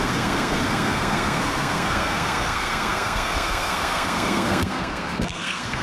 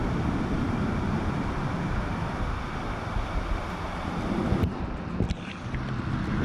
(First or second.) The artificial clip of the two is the first